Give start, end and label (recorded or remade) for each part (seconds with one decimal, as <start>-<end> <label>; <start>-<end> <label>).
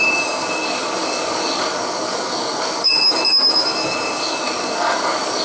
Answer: 0.0-5.4 remade